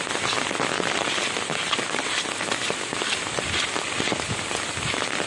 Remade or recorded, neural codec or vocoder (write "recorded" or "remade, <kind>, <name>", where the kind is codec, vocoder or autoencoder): recorded